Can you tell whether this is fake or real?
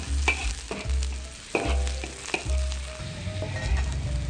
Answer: real